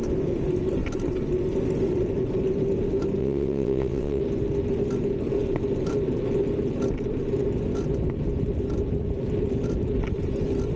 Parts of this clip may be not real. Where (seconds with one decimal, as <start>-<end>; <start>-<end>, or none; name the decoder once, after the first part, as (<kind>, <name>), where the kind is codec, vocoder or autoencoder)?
3.2-4.2 (vocoder, WaveNeXt)